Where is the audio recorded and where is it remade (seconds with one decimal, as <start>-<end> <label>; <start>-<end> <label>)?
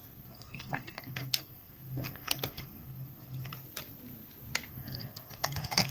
0.0-3.5 remade; 3.5-4.7 recorded; 4.7-5.9 remade